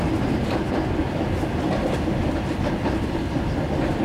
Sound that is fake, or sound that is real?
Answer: real